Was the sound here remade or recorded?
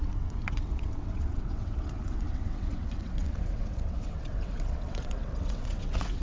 remade